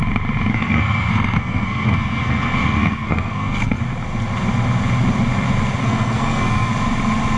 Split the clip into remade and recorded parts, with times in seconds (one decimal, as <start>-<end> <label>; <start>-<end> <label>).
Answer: 0.0-0.5 recorded; 0.5-3.8 remade; 3.8-5.8 recorded; 5.8-6.7 remade; 6.7-7.4 recorded